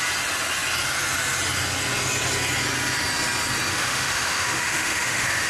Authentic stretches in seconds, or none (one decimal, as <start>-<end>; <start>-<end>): 0.0-3.7